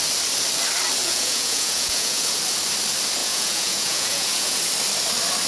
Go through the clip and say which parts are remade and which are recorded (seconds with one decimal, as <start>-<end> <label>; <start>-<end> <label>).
0.0-1.0 recorded; 1.0-2.4 remade; 2.4-3.2 recorded; 3.2-4.6 remade; 4.6-5.5 recorded